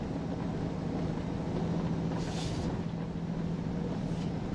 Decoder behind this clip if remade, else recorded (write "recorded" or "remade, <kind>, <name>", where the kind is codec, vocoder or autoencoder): recorded